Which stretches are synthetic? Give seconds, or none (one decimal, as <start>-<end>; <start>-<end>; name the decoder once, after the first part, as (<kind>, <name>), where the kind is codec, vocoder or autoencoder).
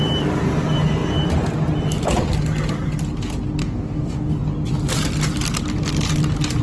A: 3.6-4.3 (codec, DAC)